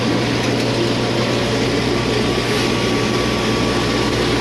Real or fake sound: real